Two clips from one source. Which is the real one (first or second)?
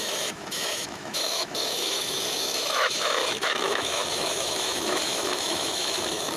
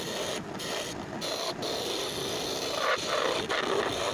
second